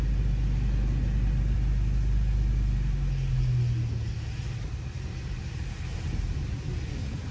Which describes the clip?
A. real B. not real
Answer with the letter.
A